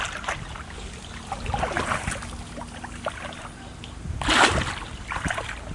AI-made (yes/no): no